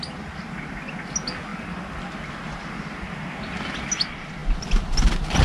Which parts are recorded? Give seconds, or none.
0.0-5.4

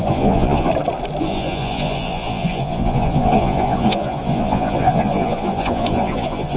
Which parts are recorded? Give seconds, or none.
0.7-1.2